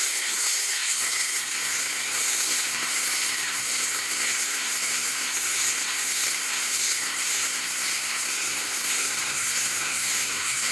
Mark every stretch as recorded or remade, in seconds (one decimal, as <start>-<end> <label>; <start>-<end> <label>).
0.0-10.7 remade